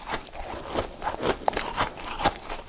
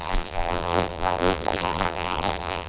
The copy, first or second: second